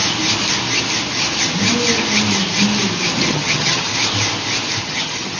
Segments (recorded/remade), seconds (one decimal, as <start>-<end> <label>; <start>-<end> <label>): 0.0-3.2 recorded; 3.2-3.9 remade; 3.9-4.8 recorded; 4.8-5.4 remade

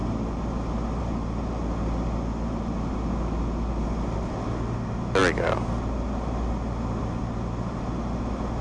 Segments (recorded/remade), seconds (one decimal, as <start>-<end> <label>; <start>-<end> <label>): 0.0-8.6 recorded